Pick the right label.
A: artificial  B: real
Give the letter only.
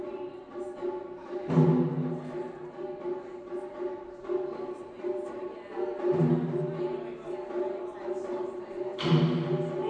B